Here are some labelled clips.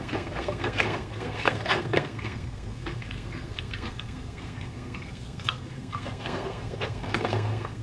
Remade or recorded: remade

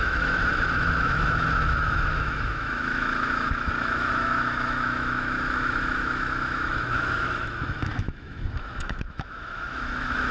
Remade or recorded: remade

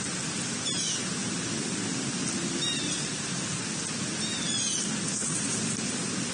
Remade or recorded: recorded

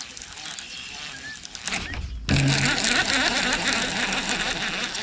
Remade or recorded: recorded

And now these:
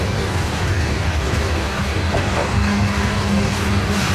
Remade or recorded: remade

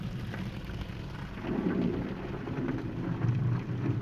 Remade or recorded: recorded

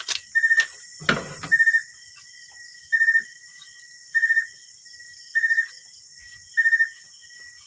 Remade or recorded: recorded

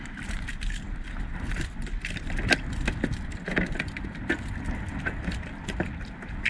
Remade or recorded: recorded